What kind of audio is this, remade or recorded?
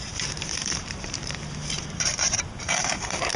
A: remade